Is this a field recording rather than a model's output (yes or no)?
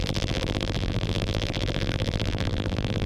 no